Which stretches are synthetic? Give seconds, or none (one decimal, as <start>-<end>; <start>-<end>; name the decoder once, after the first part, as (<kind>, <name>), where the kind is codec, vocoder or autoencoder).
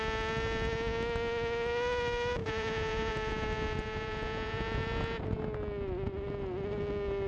2.4-5.4 (vocoder, Vocos)